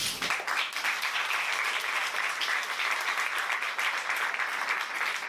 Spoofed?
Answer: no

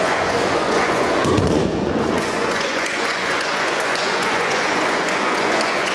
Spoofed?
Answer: yes